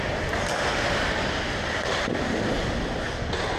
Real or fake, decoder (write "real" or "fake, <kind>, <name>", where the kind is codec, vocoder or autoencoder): real